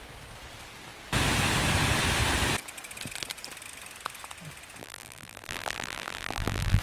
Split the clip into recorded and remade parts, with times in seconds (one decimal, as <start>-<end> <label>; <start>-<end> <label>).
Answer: 0.0-4.8 recorded; 4.8-6.8 remade